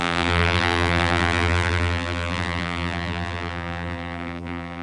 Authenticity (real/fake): fake